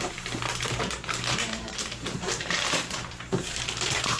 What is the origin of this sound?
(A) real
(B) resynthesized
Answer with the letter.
B